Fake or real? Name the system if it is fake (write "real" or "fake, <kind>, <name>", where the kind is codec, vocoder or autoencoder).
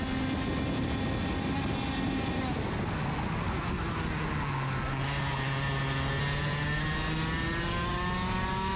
real